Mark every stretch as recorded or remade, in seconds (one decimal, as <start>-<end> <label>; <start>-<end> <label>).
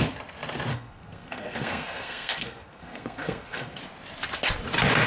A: 0.0-0.7 recorded; 0.7-3.8 remade; 3.8-5.1 recorded